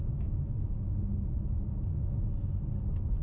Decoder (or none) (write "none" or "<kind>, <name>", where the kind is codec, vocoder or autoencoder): none